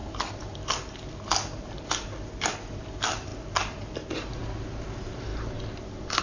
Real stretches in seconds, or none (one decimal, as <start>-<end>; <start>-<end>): 0.0-2.8; 3.3-4.1; 5.3-6.2